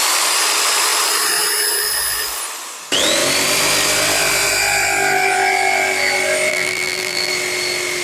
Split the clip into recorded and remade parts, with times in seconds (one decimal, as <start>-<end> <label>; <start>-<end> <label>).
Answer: 0.0-6.5 recorded; 6.5-7.3 remade; 7.3-8.0 recorded